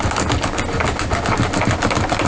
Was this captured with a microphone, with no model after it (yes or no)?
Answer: yes